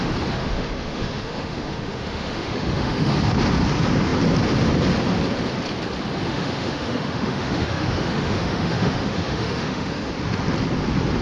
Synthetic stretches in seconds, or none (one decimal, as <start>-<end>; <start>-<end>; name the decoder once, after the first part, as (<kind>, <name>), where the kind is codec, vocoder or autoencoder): 0.4-3.1 (autoencoder, DAC-VAE); 6.3-10.1